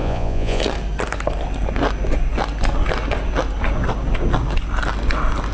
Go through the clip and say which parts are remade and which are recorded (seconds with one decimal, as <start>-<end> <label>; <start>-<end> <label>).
0.0-0.6 remade; 0.6-5.5 recorded